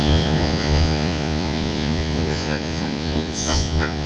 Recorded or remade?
remade